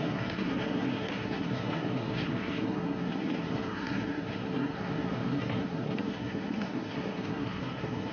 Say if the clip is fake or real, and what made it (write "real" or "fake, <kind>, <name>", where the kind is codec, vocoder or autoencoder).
fake, codec, SNAC